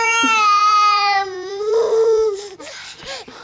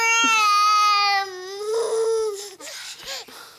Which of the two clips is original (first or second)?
second